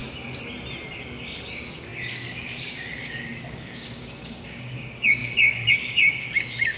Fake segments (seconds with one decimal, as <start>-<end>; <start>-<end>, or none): 1.0-6.8